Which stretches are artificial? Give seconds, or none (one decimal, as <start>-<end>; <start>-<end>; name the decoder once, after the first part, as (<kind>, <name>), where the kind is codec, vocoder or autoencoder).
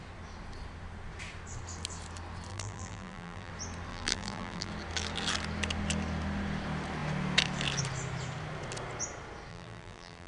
2.5-3.5 (vocoder, BigVGAN v2); 3.9-4.7; 9.5-10.3